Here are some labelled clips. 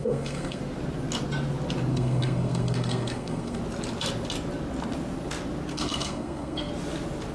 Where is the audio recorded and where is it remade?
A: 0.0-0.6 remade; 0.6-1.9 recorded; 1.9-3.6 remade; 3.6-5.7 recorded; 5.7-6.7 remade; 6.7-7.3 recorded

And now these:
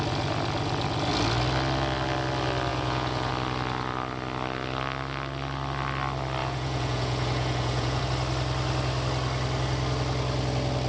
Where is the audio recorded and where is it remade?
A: 0.0-2.7 recorded; 2.7-3.3 remade; 3.3-6.4 recorded; 6.4-8.0 remade; 8.0-10.9 recorded